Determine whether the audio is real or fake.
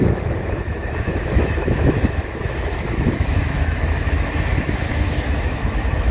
fake